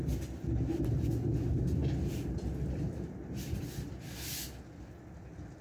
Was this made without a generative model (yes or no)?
yes